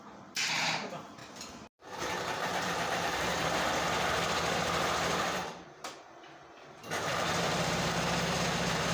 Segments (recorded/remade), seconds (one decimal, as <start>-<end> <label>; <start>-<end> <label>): 0.0-1.2 remade; 1.2-2.0 recorded; 2.0-3.3 remade; 3.3-5.2 recorded; 5.2-8.9 remade